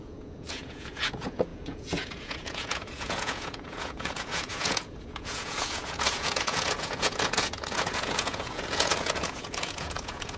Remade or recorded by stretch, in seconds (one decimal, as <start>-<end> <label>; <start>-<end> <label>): 0.0-10.4 remade